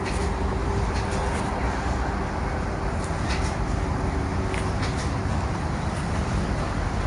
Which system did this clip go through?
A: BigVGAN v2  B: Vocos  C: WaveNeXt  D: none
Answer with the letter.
D